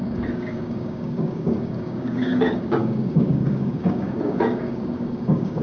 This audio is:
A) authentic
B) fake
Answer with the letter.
B